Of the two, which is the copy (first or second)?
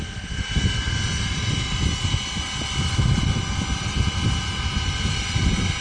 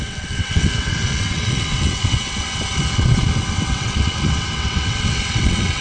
second